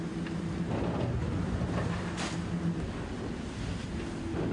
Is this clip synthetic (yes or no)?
no